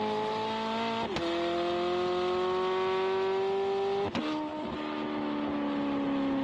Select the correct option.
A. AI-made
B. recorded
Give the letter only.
B